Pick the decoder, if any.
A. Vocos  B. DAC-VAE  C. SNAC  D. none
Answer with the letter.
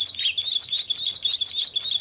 D